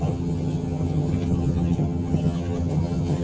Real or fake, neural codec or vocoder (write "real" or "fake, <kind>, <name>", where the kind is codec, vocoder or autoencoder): fake, vocoder, HiFi-GAN